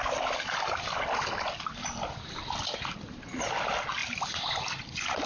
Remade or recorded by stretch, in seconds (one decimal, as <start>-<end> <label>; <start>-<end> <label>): 0.0-1.8 recorded; 1.8-2.5 remade; 2.5-5.3 recorded